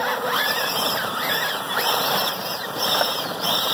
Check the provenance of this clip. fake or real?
fake